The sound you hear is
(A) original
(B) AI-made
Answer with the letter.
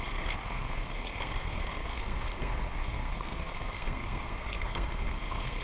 B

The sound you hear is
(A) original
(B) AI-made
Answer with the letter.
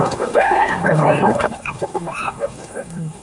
B